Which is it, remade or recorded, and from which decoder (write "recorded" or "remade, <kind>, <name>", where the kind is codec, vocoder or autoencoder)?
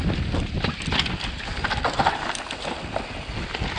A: recorded